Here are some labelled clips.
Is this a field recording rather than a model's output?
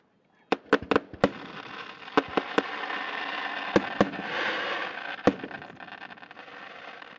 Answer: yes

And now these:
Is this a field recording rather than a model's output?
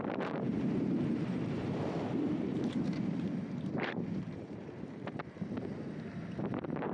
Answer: no